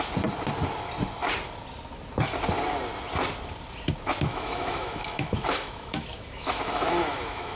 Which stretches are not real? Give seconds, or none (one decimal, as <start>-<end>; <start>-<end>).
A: 4.3-7.6

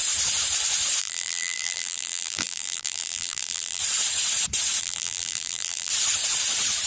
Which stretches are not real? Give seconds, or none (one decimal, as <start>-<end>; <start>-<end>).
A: 1.0-3.8; 4.8-5.9

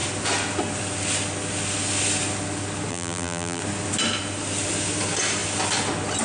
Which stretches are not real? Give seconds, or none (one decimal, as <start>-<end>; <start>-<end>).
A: 2.9-3.6